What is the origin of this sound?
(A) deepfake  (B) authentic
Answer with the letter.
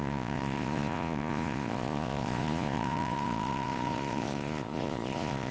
A